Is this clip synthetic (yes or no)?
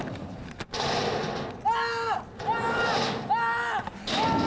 no